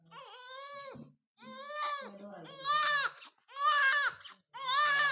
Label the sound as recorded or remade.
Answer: recorded